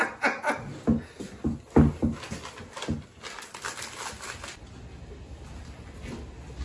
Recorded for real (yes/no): yes